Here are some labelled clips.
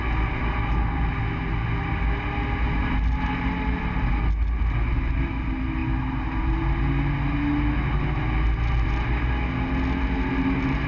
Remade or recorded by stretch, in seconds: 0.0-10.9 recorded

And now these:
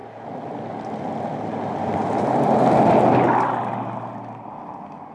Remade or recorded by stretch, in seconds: 0.0-5.1 recorded

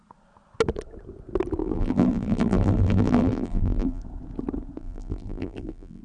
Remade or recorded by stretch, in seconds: 0.0-1.6 recorded; 1.6-4.0 remade; 4.0-4.8 recorded; 4.8-6.0 remade

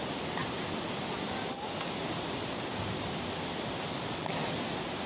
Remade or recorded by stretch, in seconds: 0.0-5.1 recorded

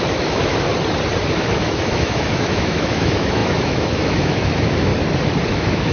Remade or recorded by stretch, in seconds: 0.0-0.7 remade; 0.7-1.3 recorded; 1.3-4.9 remade; 4.9-5.5 recorded; 5.5-5.9 remade

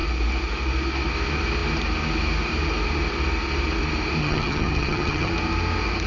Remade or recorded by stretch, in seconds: 0.0-4.2 recorded; 4.2-5.3 remade; 5.3-6.1 recorded

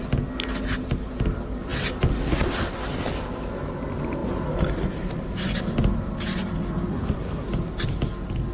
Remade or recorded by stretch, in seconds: 0.0-6.9 recorded; 6.9-7.5 remade; 7.5-8.5 recorded

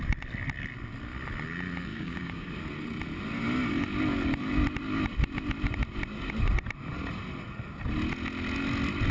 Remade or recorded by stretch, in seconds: 0.0-1.9 recorded; 1.9-2.5 remade; 2.5-9.1 recorded